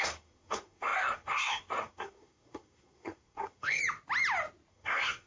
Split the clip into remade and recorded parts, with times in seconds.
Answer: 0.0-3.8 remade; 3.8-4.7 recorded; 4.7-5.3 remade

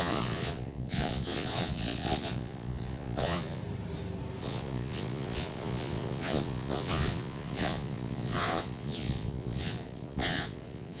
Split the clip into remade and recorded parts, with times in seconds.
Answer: 0.0-3.6 remade; 3.6-4.4 recorded; 4.4-11.0 remade

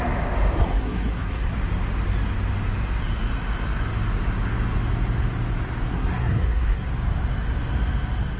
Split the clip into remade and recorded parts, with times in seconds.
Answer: 0.0-0.6 recorded; 0.6-1.5 remade; 1.5-5.9 recorded; 5.9-6.9 remade; 6.9-8.4 recorded

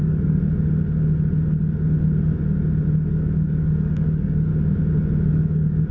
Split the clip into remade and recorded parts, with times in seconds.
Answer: 0.0-0.4 remade; 0.4-3.1 recorded; 3.1-4.5 remade; 4.5-5.3 recorded; 5.3-5.9 remade

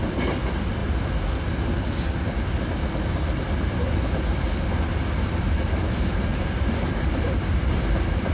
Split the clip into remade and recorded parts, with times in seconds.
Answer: 0.0-6.3 recorded; 6.3-7.8 remade; 7.8-8.3 recorded

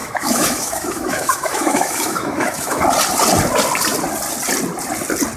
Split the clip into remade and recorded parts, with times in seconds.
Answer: 0.0-2.8 remade; 2.8-5.4 recorded

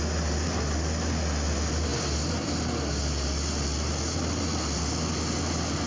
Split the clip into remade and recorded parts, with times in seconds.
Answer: 0.0-5.9 recorded